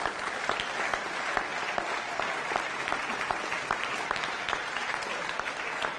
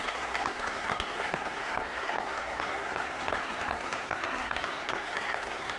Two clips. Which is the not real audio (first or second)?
second